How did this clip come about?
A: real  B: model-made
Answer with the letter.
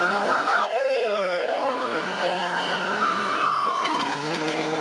B